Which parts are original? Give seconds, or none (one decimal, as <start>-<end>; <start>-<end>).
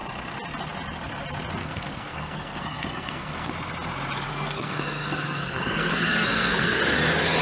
0.0-1.6; 3.5-4.3; 6.8-7.4